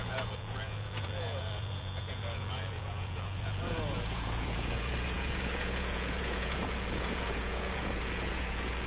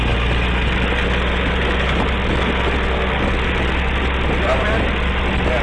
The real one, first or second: second